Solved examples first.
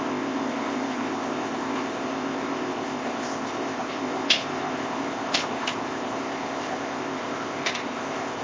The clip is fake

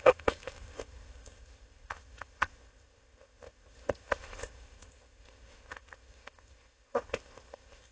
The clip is fake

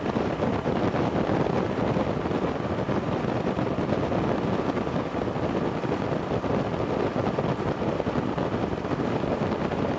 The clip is real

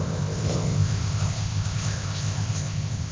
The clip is fake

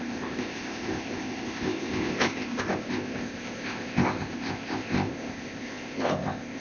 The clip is fake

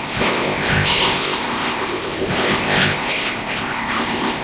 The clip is fake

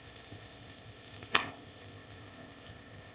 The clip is fake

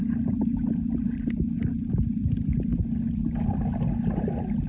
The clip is real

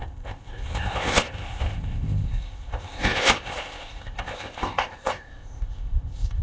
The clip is fake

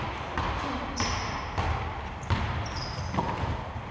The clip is real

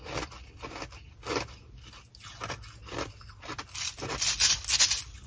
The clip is real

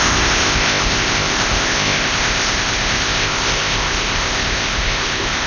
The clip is fake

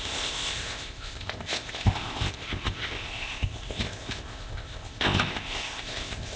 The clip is fake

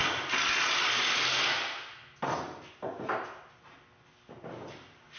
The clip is real